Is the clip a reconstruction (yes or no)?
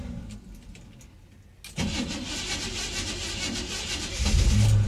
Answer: no